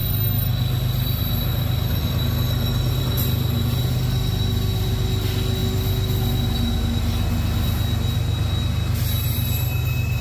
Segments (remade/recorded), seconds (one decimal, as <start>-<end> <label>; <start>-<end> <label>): 0.0-10.2 recorded